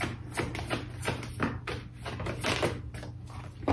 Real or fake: real